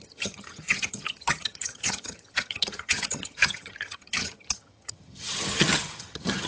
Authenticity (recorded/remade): remade